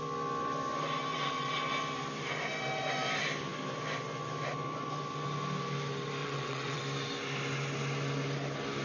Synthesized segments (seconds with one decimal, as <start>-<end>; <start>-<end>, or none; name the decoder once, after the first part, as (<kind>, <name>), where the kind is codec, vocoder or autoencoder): 1.1-1.6 (vocoder, WaveNeXt); 6.2-6.8